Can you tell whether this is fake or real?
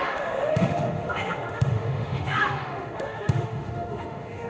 fake